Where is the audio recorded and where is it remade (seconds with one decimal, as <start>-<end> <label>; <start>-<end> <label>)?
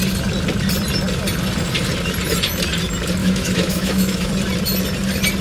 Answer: 0.0-3.2 recorded; 3.2-4.3 remade; 4.3-5.4 recorded